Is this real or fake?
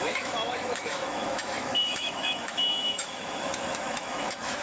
fake